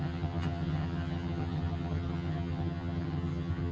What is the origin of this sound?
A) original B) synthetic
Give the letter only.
B